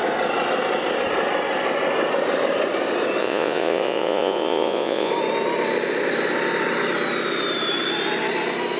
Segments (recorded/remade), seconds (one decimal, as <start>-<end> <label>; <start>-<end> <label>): 0.0-3.2 recorded; 3.2-5.1 remade; 5.1-8.8 recorded

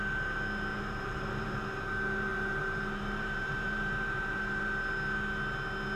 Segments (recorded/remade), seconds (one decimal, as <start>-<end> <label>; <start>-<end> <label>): 0.0-0.7 recorded; 0.7-1.8 remade; 1.8-2.3 recorded; 2.3-4.6 remade; 4.6-6.0 recorded

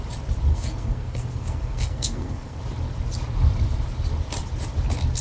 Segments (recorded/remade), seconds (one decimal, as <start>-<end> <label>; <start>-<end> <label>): 0.0-0.5 recorded; 0.5-2.6 remade; 2.6-5.2 recorded

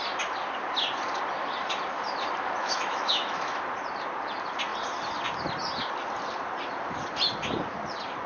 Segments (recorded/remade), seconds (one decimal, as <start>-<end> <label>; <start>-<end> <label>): 0.0-2.6 recorded; 2.6-3.6 remade; 3.6-8.3 recorded

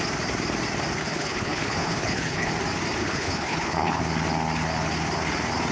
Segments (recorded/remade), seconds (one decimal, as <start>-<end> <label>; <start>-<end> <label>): 0.0-1.0 recorded; 1.0-2.5 remade; 2.5-3.0 recorded; 3.0-4.0 remade; 4.0-5.7 recorded

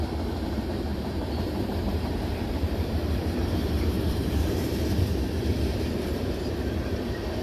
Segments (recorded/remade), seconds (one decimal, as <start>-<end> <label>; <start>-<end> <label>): 0.0-0.9 recorded; 0.9-5.1 remade; 5.1-5.7 recorded; 5.7-6.2 remade; 6.2-7.4 recorded

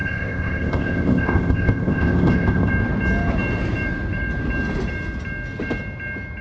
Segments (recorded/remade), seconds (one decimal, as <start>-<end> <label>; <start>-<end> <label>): 0.0-2.7 remade; 2.7-6.4 recorded